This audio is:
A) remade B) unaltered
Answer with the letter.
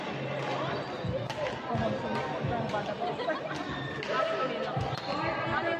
B